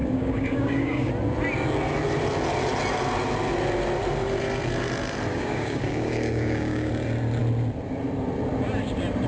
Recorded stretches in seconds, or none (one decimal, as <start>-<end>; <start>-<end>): 1.1-5.3; 6.9-9.3